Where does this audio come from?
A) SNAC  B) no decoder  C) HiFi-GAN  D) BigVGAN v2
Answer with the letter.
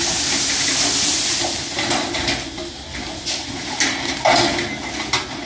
B